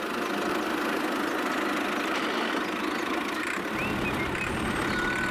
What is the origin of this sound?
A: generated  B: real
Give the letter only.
B